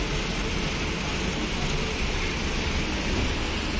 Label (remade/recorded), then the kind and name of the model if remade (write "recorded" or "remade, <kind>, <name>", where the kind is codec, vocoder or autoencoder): recorded